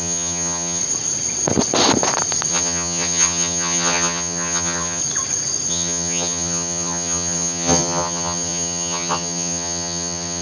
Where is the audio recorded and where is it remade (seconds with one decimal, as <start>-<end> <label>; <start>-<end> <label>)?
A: 0.0-0.8 remade; 0.8-2.5 recorded; 2.5-5.0 remade; 5.0-5.7 recorded; 5.7-10.4 remade